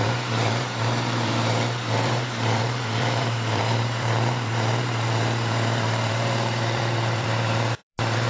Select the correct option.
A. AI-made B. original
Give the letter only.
A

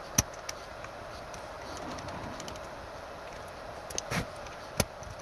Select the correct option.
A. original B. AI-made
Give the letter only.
A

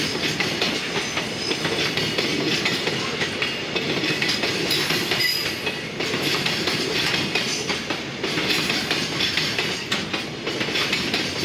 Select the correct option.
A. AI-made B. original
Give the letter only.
B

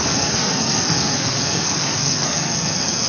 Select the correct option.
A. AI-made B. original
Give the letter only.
A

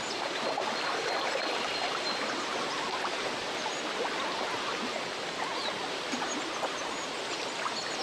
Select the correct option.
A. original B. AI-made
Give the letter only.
A